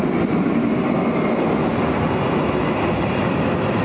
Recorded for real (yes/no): yes